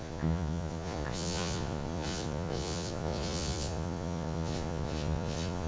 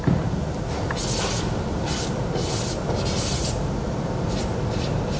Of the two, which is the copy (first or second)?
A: first